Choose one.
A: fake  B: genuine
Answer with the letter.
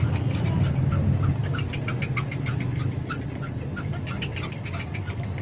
B